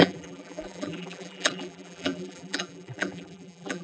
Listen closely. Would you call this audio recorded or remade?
remade